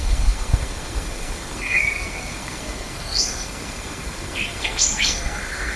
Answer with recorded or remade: remade